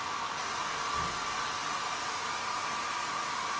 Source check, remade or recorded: recorded